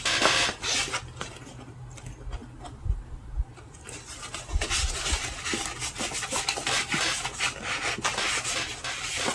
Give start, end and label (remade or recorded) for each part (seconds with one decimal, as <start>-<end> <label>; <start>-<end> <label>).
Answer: 0.0-9.3 recorded